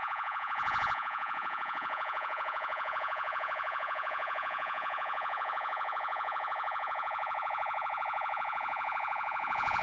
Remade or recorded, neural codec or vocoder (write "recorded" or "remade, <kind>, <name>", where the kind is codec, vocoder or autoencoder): remade, vocoder, Vocos